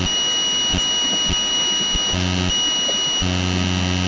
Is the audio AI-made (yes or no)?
no